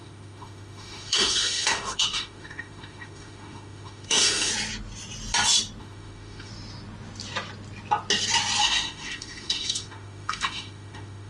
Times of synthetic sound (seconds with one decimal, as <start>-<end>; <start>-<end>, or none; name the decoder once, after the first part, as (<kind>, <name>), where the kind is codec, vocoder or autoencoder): 0.0-4.5 (autoencoder, DAC-VAE); 5.8-6.5; 8.6-11.3